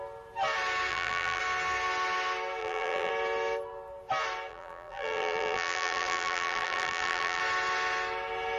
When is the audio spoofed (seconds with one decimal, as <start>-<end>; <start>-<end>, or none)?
0.9-1.4; 2.6-3.1; 4.5-7.4

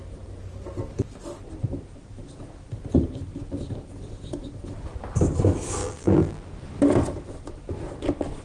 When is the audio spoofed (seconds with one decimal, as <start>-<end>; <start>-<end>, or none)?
5.8-6.4